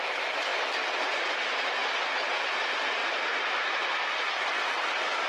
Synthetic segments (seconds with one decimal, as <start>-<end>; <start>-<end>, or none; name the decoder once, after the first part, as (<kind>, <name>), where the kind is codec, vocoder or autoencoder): 1.8-2.4 (vocoder, BigVGAN v2); 3.0-3.8